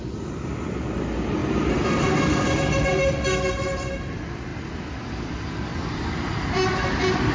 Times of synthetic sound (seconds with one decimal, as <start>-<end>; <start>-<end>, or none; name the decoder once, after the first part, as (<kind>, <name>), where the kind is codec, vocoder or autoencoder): none